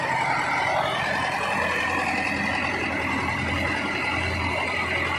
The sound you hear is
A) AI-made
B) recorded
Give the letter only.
B